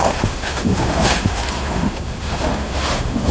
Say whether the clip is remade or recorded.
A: remade